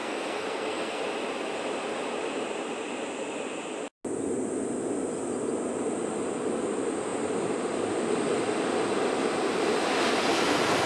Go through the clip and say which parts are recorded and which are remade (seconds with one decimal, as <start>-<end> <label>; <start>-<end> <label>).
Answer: 0.0-1.0 remade; 1.0-10.9 recorded